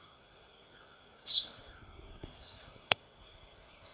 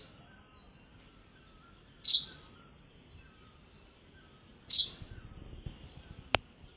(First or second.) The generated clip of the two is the first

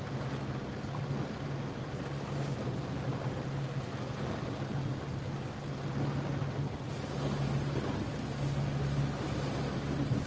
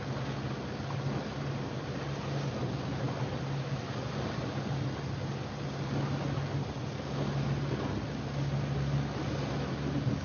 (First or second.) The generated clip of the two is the first